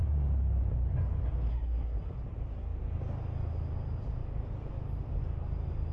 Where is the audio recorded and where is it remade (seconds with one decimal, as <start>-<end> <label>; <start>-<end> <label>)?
0.0-1.5 recorded; 1.5-2.2 remade; 2.2-5.9 recorded